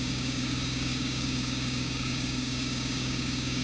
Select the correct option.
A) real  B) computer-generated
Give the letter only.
B